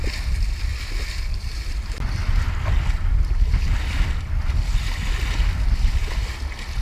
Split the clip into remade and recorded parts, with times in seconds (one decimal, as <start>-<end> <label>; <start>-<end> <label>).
0.0-6.8 recorded